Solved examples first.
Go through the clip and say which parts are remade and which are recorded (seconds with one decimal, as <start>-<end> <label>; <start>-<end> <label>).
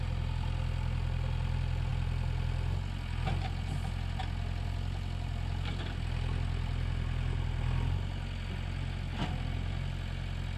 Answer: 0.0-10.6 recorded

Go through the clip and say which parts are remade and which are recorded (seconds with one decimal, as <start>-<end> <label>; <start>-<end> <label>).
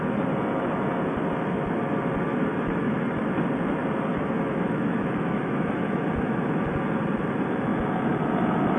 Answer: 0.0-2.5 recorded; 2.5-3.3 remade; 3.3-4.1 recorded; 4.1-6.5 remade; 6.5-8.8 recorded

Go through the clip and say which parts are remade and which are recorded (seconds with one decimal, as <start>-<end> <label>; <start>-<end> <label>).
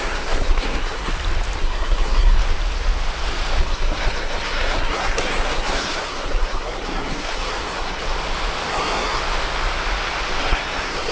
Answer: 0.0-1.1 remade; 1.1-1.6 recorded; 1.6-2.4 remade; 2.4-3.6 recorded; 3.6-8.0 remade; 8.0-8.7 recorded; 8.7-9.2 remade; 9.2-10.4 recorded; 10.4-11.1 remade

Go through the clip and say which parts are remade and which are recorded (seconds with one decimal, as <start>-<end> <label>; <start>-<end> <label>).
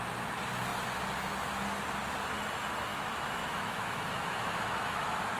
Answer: 0.0-2.9 recorded; 2.9-5.4 remade